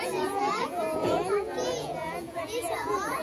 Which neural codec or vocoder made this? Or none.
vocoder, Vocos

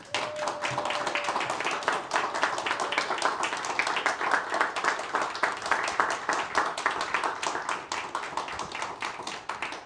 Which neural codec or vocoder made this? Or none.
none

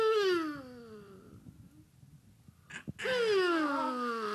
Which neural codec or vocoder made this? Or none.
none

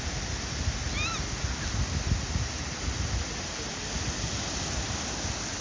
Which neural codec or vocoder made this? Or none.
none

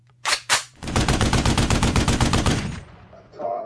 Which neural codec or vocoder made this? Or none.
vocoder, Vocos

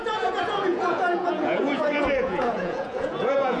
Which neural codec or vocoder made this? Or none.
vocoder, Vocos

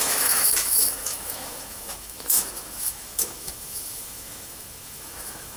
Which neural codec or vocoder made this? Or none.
autoencoder, DAC-VAE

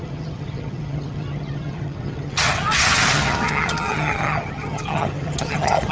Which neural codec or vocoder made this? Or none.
vocoder, HiFi-GAN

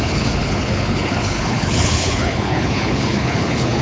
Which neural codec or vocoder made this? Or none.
codec, HILCodec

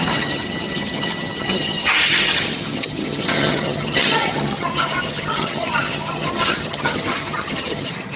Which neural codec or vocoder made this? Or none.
vocoder, HiFi-GAN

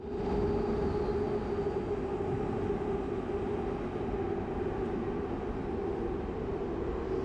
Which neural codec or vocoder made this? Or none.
none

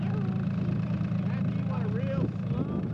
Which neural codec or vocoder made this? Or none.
none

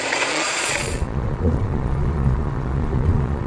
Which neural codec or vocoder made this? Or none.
vocoder, Vocos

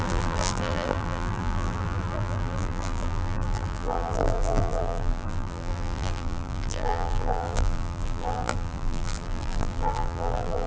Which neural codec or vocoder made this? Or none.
vocoder, BigVGAN v2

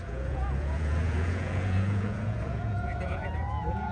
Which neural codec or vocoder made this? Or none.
vocoder, Vocos